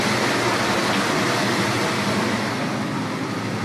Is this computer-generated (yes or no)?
no